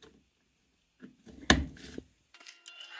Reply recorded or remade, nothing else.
recorded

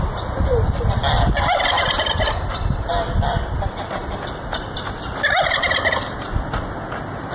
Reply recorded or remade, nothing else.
recorded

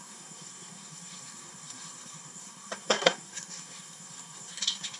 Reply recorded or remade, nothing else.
remade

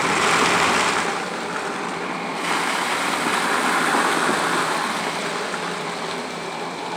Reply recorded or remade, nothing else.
remade